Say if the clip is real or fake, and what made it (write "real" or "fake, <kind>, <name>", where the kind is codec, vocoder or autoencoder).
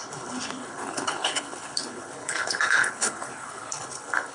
fake, codec, HILCodec